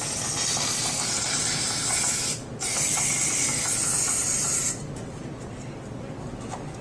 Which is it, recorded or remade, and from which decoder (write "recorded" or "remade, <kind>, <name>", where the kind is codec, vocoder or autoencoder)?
recorded